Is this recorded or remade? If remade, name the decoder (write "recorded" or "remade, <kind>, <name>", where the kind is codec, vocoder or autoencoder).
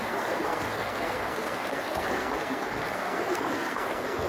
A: remade, codec, SNAC